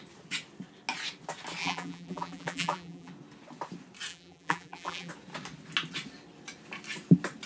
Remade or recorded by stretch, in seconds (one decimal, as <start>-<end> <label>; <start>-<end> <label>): 0.0-1.6 recorded; 1.6-3.1 remade; 3.1-4.1 recorded; 4.1-5.1 remade; 5.1-7.5 recorded